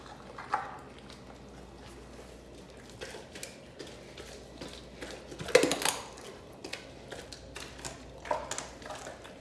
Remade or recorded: recorded